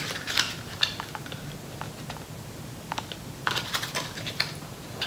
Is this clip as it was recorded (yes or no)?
yes